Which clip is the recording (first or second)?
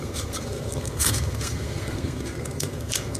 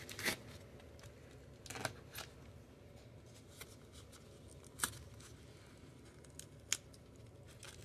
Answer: second